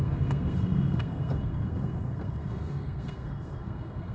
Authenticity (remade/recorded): remade